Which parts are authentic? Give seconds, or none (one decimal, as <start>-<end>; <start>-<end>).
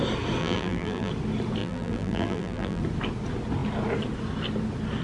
0.0-0.4; 1.1-1.6; 2.8-5.0